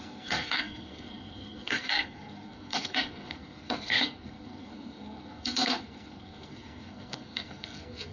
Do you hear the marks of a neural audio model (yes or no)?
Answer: yes